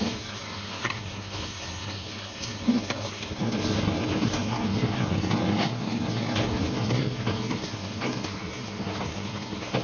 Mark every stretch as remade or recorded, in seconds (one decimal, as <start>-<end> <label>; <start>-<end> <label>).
0.0-9.8 remade